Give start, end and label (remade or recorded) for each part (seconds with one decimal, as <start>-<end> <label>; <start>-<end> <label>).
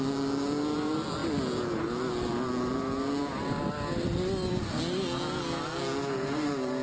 0.0-6.8 recorded